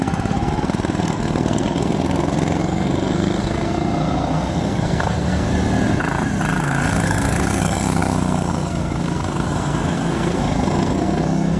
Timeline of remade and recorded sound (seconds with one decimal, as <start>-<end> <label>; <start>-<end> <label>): 0.0-5.5 remade; 5.5-6.6 recorded; 6.6-11.6 remade